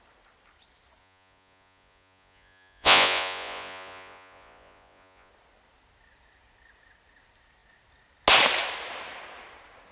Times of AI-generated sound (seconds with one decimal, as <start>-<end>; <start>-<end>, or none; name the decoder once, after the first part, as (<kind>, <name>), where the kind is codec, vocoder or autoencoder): 1.0-5.3 (vocoder, Vocos)